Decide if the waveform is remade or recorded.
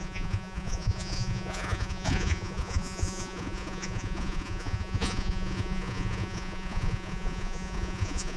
remade